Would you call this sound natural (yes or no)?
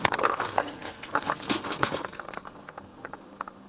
no